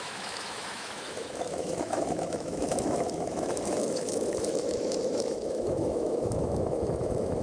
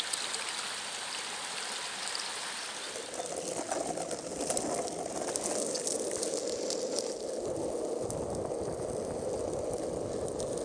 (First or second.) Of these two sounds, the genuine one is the second